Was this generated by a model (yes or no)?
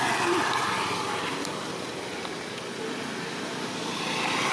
no